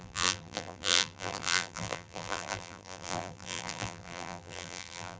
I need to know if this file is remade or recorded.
remade